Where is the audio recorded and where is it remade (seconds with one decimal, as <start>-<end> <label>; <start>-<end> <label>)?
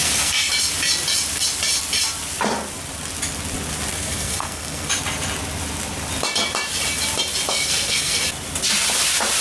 0.0-0.5 remade; 0.5-3.9 recorded; 3.9-4.9 remade; 4.9-7.5 recorded; 7.5-8.2 remade; 8.2-9.4 recorded